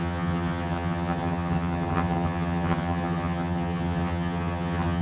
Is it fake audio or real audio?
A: fake